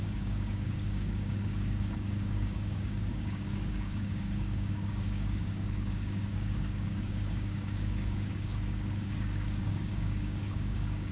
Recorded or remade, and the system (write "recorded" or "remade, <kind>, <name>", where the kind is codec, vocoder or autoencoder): remade, codec, DAC